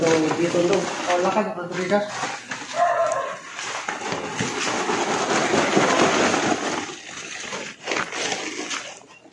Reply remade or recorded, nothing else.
recorded